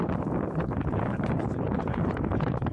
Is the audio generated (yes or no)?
yes